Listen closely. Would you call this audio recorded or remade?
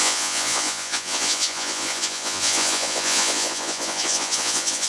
remade